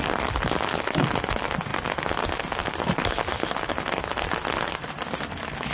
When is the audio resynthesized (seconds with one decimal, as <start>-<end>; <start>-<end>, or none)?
none